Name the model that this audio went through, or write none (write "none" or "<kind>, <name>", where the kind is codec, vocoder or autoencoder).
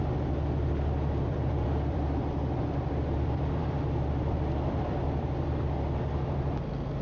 vocoder, BigVGAN v2